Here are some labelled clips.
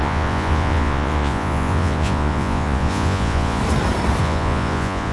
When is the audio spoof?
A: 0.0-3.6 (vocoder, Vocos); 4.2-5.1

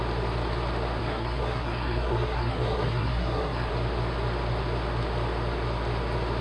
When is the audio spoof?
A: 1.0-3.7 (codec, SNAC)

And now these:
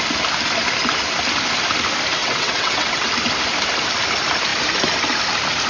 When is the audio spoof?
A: 2.2-3.1 (vocoder, WaveNeXt)

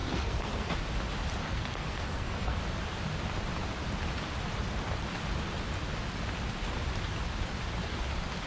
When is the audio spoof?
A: 0.0-0.7 (codec, SNAC); 1.4-2.6

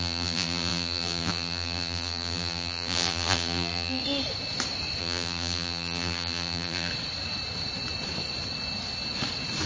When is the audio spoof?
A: 0.0-4.0 (vocoder, BigVGAN v2); 5.0-6.9

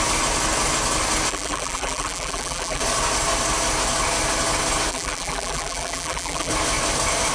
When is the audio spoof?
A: 1.3-2.8 (vocoder, BigVGAN v2); 4.9-6.5

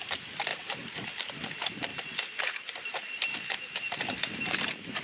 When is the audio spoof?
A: 0.5-1.3 (vocoder, BigVGAN v2); 3.3-4.6